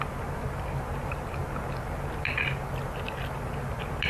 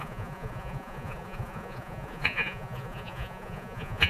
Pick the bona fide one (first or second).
first